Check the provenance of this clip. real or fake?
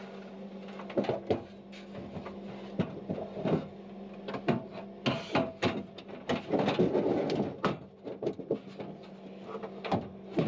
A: real